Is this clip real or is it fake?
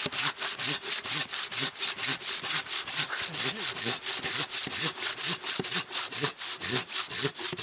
real